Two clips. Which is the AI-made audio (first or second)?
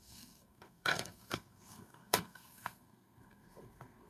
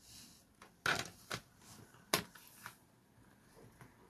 first